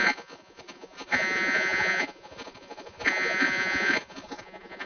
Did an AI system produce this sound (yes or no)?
yes